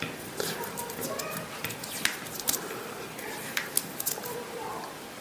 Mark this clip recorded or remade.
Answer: recorded